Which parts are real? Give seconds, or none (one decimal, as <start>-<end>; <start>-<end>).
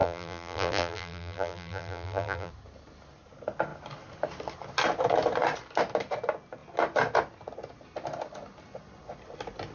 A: 2.5-9.7